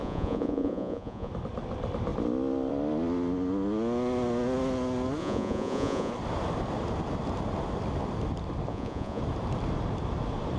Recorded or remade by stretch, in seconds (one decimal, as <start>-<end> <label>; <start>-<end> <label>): 0.0-1.3 remade; 1.3-5.2 recorded; 5.2-6.1 remade; 6.1-8.7 recorded; 8.7-9.2 remade; 9.2-10.6 recorded